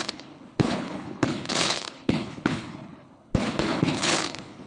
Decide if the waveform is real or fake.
fake